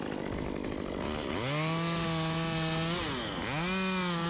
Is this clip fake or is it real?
real